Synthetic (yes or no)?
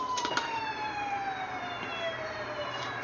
yes